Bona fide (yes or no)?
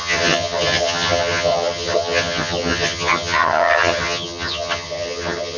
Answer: no